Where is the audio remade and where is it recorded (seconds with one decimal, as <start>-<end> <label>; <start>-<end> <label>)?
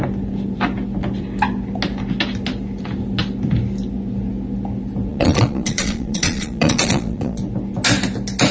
0.0-5.1 recorded; 5.1-7.4 remade; 7.4-8.5 recorded